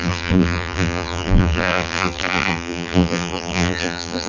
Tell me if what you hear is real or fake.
fake